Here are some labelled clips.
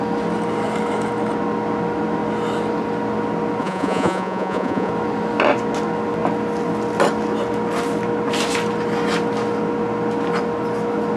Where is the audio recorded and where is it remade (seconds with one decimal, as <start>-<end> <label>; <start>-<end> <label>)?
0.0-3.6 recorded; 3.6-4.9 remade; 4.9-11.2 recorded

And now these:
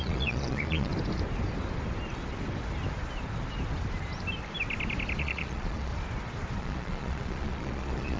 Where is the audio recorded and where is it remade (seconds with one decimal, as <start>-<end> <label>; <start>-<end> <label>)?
0.0-0.9 remade; 0.9-5.2 recorded; 5.2-5.9 remade; 5.9-6.6 recorded; 6.6-8.2 remade

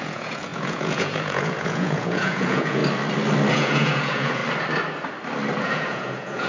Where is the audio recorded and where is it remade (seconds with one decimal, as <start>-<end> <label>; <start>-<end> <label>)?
0.0-2.8 remade; 2.8-3.5 recorded; 3.5-4.4 remade; 4.4-5.6 recorded; 5.6-6.5 remade

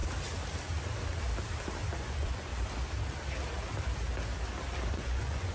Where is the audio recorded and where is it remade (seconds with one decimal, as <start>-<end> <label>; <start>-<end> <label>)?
0.0-2.0 recorded; 2.0-2.5 remade; 2.5-4.9 recorded; 4.9-5.5 remade

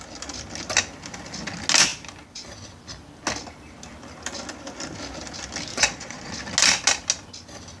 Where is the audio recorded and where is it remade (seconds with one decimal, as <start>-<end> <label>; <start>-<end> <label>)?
0.0-5.7 recorded; 5.7-6.3 remade; 6.3-7.8 recorded